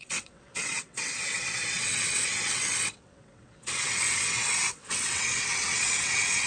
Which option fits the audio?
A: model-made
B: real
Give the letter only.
A